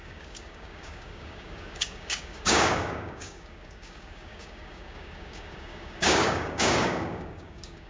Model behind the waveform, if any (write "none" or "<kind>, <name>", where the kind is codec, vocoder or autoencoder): codec, DAC